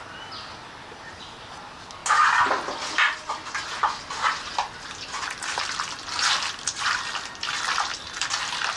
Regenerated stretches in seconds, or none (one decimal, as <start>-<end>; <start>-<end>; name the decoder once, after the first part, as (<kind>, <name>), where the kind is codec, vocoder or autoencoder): none